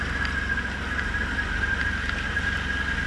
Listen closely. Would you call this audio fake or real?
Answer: real